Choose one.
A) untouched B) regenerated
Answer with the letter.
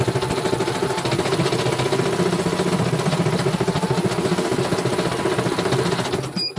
A